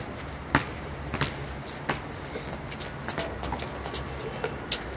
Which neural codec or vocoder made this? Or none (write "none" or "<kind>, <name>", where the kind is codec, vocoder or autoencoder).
none